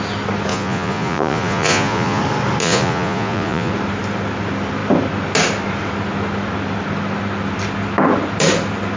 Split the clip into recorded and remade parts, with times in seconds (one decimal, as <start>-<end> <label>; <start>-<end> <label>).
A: 0.0-0.5 recorded; 0.5-2.2 remade; 2.2-2.6 recorded; 2.6-3.7 remade; 3.7-9.0 recorded